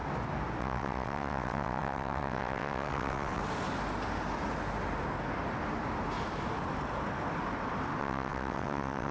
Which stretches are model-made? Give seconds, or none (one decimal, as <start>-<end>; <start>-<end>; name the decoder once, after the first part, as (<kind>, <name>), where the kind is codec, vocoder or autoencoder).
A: 0.6-3.4 (vocoder, WaveNeXt); 8.0-9.1